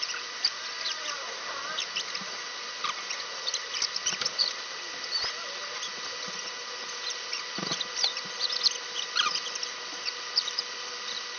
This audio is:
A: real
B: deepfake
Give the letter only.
A